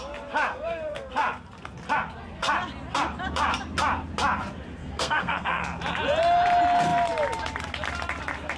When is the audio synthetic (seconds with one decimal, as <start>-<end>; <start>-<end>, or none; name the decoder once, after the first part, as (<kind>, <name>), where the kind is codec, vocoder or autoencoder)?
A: 0.5-1.1 (codec, SNAC); 4.8-5.6